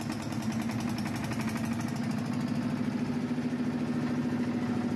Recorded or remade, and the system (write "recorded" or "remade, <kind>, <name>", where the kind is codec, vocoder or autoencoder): recorded